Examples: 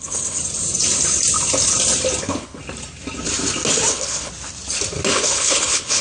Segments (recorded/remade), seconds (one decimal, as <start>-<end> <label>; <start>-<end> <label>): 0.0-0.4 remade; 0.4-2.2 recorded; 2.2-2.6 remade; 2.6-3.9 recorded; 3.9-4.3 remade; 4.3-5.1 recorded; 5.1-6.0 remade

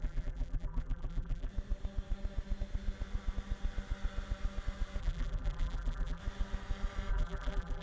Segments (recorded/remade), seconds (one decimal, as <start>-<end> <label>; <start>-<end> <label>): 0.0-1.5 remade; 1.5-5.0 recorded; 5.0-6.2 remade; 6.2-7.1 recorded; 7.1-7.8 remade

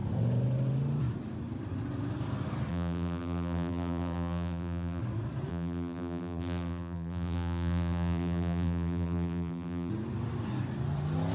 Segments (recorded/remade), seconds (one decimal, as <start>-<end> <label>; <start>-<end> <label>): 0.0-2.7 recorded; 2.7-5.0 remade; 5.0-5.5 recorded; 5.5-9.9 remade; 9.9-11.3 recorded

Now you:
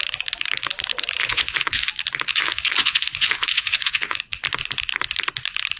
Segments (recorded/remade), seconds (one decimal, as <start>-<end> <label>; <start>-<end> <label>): 0.0-1.2 recorded; 1.2-1.9 remade; 1.9-2.3 recorded; 2.3-4.2 remade; 4.2-5.8 recorded

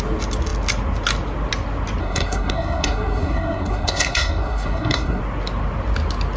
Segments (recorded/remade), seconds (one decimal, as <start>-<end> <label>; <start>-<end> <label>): 0.0-2.0 recorded; 2.0-5.2 remade; 5.2-6.4 recorded

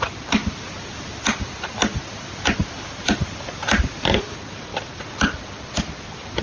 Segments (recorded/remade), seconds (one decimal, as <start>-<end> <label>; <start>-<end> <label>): 0.0-6.4 recorded

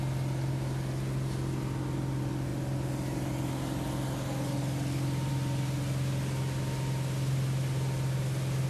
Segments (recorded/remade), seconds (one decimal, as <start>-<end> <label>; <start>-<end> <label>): 0.0-8.7 recorded

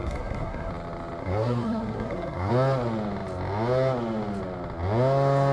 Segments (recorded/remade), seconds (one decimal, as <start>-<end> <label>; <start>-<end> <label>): 0.0-0.7 remade; 0.7-1.2 recorded; 1.2-2.5 remade; 2.5-5.5 recorded